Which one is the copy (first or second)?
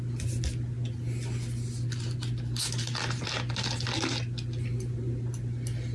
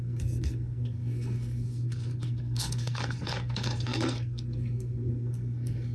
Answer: second